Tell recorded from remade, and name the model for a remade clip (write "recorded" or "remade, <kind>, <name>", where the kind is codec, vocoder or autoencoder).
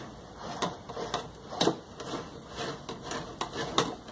recorded